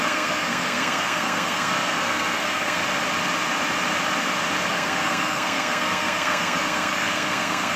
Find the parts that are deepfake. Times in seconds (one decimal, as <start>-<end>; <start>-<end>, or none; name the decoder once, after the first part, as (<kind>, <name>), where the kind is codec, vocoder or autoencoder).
0.0-2.8 (codec, SNAC); 4.7-7.8